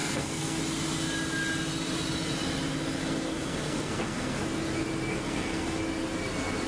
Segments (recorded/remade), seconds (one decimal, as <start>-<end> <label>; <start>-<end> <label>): 0.0-0.6 remade; 0.6-3.0 recorded; 3.0-4.4 remade; 4.4-5.1 recorded; 5.1-5.8 remade; 5.8-6.7 recorded